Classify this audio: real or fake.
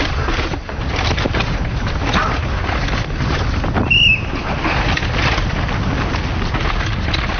real